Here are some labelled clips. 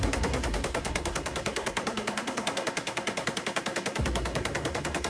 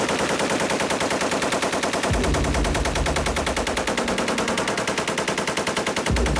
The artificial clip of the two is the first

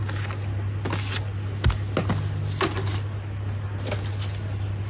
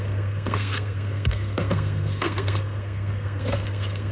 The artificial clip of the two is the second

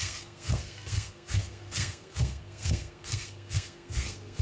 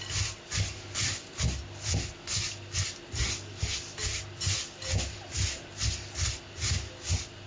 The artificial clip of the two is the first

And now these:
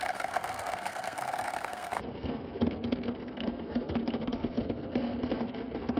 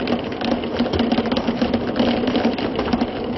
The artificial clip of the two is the first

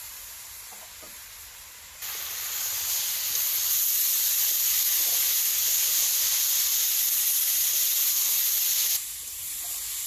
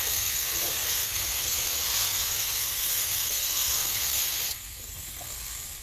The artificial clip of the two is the second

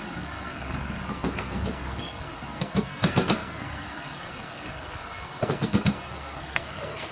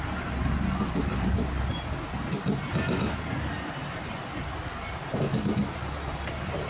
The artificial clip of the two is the first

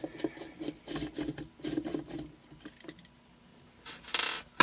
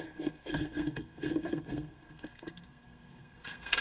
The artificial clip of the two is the second